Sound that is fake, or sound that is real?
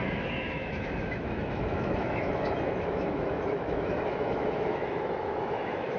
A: fake